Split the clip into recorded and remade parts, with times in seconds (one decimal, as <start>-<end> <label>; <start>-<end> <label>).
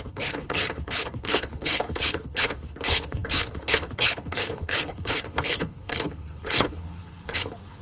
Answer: 0.0-7.8 remade